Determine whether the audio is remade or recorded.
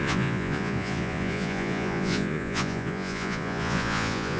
remade